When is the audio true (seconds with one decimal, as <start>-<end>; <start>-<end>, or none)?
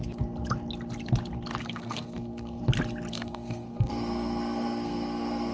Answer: 0.0-1.6; 2.6-3.1